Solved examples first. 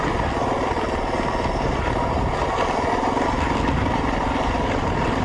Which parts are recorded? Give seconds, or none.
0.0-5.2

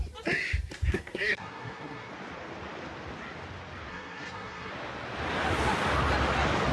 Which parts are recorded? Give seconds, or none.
0.0-0.9; 2.1-3.9; 4.7-6.7

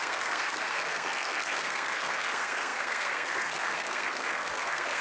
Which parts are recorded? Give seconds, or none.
none